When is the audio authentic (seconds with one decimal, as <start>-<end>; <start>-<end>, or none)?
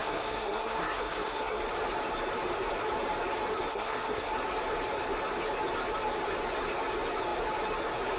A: 1.6-3.7; 4.3-8.2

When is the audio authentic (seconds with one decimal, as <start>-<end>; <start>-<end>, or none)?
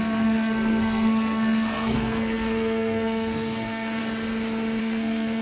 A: 4.0-4.8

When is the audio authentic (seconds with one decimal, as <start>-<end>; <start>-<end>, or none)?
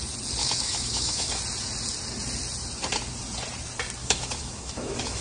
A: 0.0-0.4; 1.4-4.0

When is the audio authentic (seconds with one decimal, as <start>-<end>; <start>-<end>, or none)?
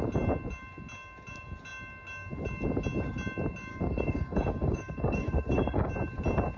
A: 0.0-3.7; 5.9-6.6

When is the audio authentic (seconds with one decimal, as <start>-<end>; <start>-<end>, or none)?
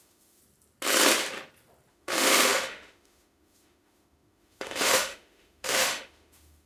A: 0.4-1.9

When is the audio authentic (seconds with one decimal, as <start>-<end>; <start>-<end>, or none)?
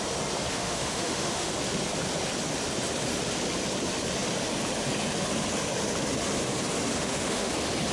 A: 0.0-0.5; 1.5-6.9; 7.5-7.9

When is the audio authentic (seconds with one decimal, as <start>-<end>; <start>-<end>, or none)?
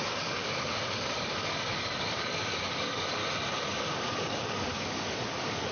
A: 3.2-3.9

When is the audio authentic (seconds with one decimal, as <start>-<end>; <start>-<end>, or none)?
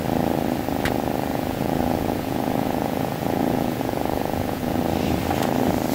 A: 0.0-1.3; 4.8-5.9